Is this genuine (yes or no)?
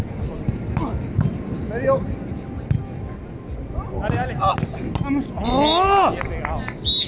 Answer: yes